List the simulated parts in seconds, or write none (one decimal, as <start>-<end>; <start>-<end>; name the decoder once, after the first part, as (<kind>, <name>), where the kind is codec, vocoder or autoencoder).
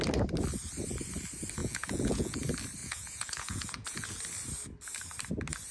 1.6-2.4 (vocoder, Vocos); 2.8-4.2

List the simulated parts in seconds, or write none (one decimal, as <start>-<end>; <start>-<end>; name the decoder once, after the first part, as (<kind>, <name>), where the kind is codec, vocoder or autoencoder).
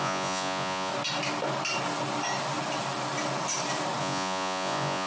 0.0-0.9 (vocoder, Vocos); 4.0-5.1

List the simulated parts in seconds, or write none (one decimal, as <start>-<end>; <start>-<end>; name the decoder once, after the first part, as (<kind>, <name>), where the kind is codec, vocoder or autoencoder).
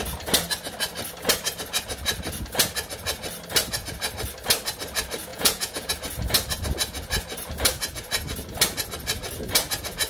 5.3-5.9 (vocoder, Vocos)